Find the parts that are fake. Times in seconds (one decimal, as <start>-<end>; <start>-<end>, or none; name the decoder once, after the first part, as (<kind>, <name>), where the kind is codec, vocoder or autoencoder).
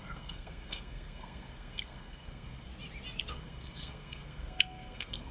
0.0-2.7 (codec, SNAC); 3.3-5.3